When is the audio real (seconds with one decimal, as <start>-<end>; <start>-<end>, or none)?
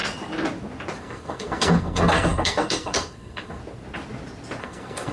0.0-1.0; 3.6-4.6